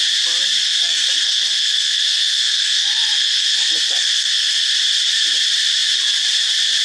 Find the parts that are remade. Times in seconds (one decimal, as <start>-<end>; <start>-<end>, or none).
0.6-4.7